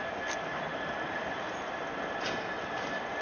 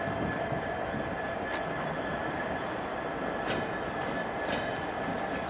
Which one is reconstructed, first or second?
first